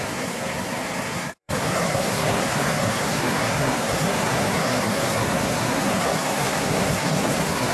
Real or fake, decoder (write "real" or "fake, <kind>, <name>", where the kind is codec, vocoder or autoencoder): fake, codec, SNAC